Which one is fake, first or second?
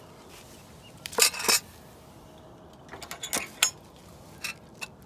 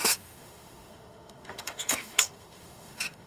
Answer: second